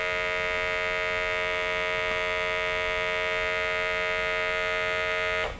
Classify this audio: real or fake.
real